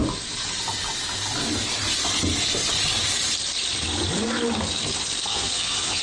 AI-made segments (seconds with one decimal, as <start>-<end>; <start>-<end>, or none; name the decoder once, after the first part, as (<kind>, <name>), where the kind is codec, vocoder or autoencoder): 5.3-6.0 (vocoder, Vocos)